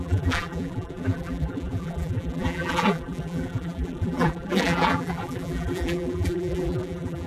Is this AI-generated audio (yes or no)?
yes